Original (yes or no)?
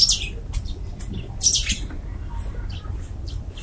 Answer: yes